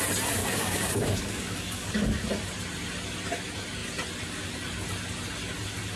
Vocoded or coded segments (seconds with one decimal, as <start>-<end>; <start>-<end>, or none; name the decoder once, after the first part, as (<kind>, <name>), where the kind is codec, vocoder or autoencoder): 0.4-2.3 (codec, DAC)